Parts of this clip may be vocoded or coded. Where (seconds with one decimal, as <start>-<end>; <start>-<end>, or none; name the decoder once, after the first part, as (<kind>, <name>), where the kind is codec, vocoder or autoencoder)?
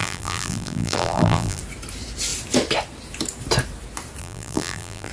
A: 0.0-1.6 (vocoder, BigVGAN v2); 4.2-5.1